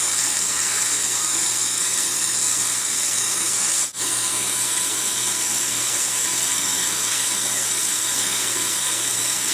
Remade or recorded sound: remade